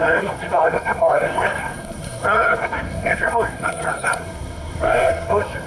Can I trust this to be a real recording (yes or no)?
no